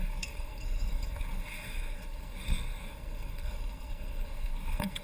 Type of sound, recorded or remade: remade